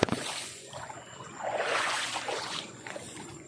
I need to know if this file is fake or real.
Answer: fake